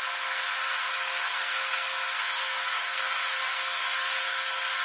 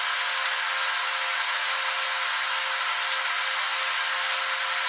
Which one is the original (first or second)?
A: second